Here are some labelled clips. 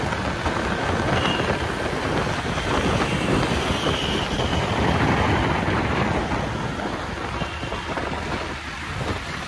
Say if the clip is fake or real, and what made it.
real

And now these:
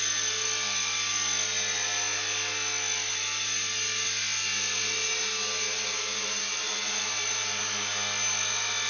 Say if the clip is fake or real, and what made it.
real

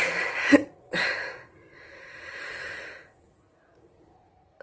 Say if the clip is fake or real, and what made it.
fake, vocoder, Vocos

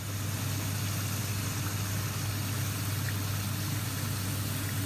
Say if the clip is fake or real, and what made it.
real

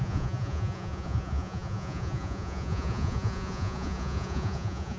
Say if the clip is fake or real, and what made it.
fake, vocoder, Vocos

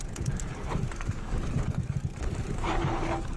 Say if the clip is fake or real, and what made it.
fake, codec, DAC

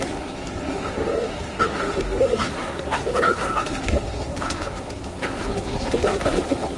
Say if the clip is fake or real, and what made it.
fake, codec, SNAC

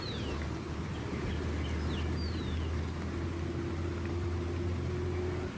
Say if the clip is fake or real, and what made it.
real